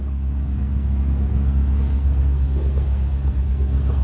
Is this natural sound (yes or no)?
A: no